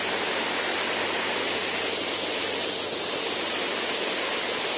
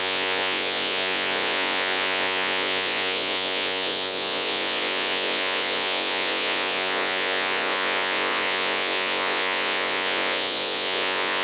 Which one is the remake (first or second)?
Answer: second